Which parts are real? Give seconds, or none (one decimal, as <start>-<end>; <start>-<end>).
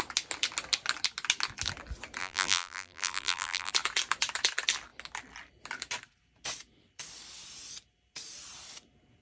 0.0-2.2; 3.7-9.2